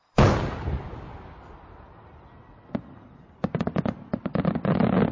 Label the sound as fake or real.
real